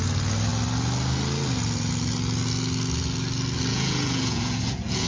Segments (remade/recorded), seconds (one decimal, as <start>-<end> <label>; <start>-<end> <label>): 0.0-3.7 recorded; 3.7-5.1 remade

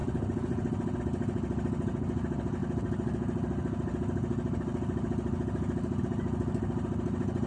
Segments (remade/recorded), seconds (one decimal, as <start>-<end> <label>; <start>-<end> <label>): 0.0-7.5 recorded

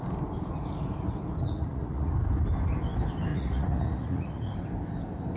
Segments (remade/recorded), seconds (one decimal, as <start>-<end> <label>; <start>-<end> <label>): 0.0-1.4 recorded; 1.4-2.1 remade; 2.1-3.3 recorded; 3.3-4.5 remade; 4.5-5.4 recorded

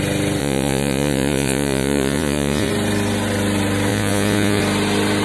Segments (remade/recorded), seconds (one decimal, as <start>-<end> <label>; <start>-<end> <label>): 0.0-0.4 recorded; 0.4-2.7 remade; 2.7-3.9 recorded; 3.9-4.6 remade; 4.6-5.2 recorded

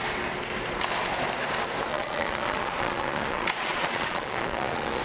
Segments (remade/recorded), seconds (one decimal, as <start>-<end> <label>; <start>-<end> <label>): 0.0-1.9 recorded; 1.9-5.0 remade